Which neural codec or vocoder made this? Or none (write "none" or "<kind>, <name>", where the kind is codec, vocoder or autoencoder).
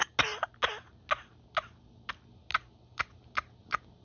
none